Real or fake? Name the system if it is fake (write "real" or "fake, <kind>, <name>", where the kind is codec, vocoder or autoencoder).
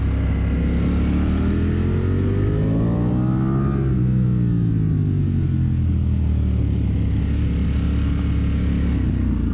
real